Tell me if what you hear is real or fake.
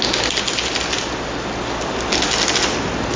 real